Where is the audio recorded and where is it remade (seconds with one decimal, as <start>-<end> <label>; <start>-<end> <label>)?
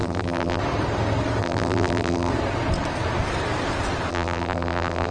0.0-0.6 remade; 0.6-1.4 recorded; 1.4-2.3 remade; 2.3-4.1 recorded; 4.1-5.1 remade